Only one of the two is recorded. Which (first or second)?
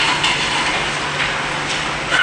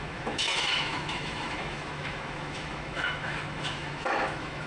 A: first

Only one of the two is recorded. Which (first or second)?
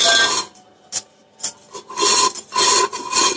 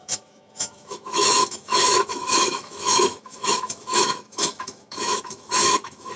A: first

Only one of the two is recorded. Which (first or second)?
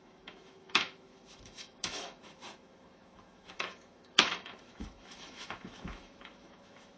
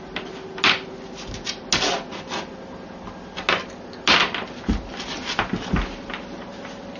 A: second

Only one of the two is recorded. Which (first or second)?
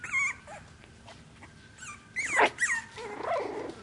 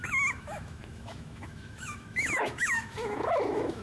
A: first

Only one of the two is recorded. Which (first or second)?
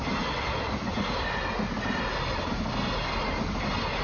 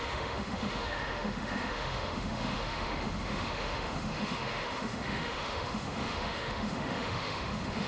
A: first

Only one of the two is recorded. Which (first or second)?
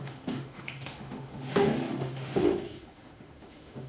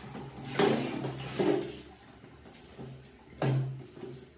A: second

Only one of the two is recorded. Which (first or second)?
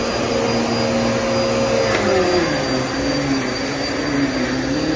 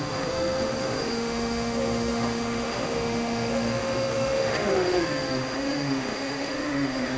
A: first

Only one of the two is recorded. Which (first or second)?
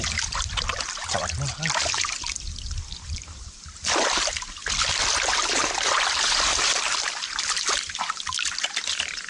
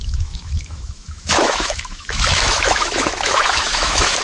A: first